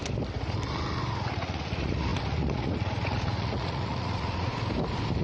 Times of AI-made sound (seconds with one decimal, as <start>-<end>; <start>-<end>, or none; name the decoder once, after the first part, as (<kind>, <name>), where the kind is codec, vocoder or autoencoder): 1.2-4.5 (vocoder, Vocos)